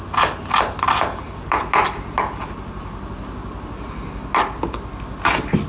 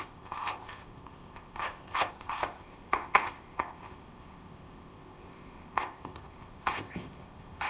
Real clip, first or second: first